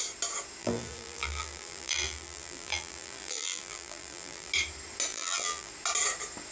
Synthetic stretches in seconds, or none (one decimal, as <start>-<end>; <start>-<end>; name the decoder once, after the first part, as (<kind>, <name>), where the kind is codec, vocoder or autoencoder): 0.6-4.5 (vocoder, BigVGAN v2); 5.1-5.7